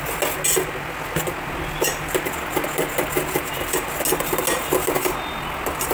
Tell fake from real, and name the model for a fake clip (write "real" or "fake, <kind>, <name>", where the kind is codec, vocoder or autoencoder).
real